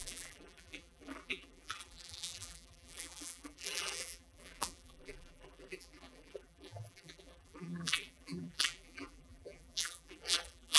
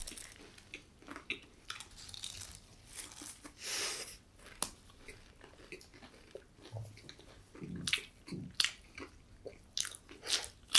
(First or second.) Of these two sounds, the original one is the second